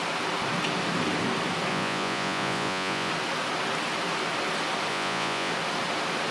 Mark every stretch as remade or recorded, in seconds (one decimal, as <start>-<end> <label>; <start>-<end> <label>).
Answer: 0.0-1.7 recorded; 1.7-3.1 remade; 3.1-4.9 recorded; 4.9-5.5 remade; 5.5-6.3 recorded

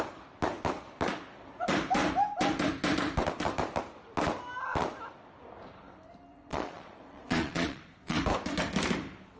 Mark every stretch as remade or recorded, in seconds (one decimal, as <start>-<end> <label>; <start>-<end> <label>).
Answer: 0.0-6.3 recorded; 6.3-8.2 remade; 8.2-9.4 recorded

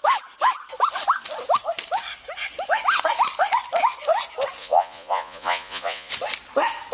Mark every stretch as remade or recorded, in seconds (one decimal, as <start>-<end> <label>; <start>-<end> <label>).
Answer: 0.0-4.6 recorded; 4.6-6.1 remade; 6.1-6.9 recorded